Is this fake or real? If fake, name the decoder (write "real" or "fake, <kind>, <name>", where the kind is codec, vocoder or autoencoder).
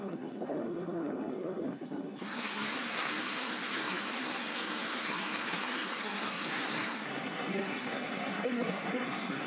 fake, codec, SNAC